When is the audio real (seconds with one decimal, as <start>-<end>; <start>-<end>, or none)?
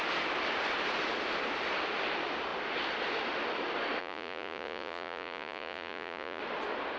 0.0-4.0; 6.4-7.0